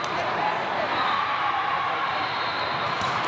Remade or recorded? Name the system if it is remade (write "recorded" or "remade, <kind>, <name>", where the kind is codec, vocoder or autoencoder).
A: remade, vocoder, BigVGAN v2